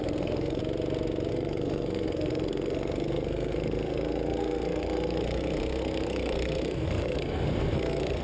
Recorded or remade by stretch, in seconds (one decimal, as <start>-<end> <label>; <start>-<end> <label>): 0.0-0.6 remade; 0.6-1.3 recorded; 1.3-8.2 remade